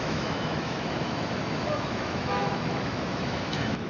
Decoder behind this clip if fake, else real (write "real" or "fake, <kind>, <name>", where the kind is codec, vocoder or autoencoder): fake, autoencoder, DAC-VAE